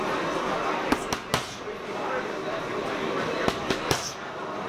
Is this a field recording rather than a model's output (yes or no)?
yes